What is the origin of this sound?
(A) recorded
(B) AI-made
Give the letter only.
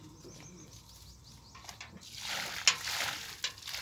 A